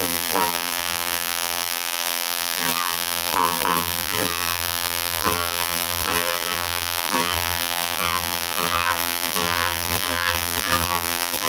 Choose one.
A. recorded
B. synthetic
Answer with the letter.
B